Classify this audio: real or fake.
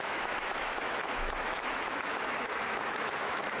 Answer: fake